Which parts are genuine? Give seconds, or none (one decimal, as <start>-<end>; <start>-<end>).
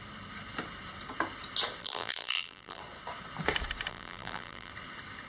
0.0-1.8; 2.8-3.9; 4.7-5.3